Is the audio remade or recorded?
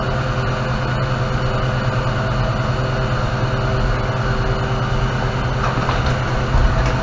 recorded